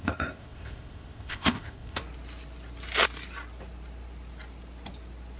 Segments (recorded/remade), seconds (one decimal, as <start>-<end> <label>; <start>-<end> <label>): 0.0-2.0 remade; 2.0-5.4 recorded